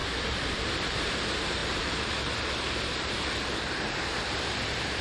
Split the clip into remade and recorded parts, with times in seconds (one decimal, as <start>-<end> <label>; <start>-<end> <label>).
0.0-5.0 remade